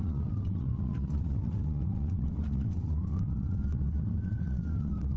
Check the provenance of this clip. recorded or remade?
remade